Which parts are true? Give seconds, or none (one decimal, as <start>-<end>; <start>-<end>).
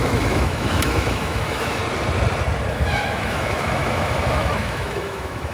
1.8-2.7